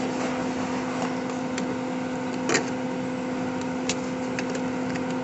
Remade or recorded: recorded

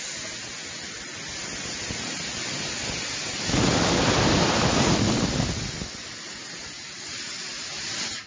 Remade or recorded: recorded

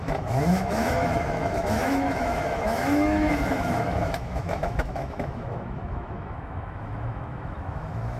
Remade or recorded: remade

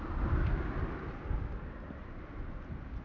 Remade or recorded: recorded